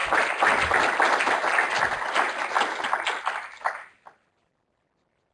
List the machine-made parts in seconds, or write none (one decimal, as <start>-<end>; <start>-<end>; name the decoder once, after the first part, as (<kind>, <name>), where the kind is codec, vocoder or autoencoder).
0.0-3.2 (vocoder, BigVGAN v2)